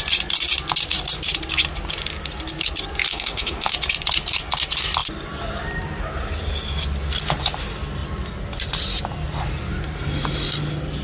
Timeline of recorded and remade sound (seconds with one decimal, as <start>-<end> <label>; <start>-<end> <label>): 0.0-3.1 recorded; 3.1-3.7 remade; 3.7-11.0 recorded